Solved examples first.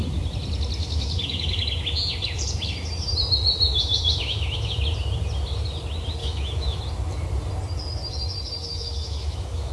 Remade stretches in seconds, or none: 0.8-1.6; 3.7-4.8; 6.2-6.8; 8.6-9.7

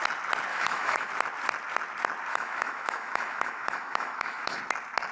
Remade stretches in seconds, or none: 0.5-1.1; 2.3-4.6

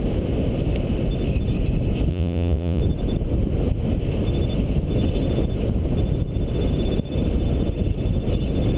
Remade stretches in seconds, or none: 2.1-2.8

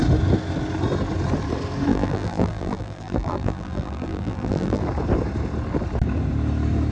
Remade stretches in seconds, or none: 1.9-4.8